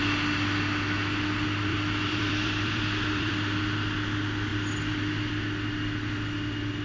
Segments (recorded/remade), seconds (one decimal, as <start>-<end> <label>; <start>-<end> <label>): 0.0-1.7 recorded; 1.7-3.6 remade; 3.6-6.8 recorded